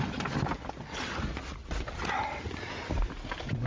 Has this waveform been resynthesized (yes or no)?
no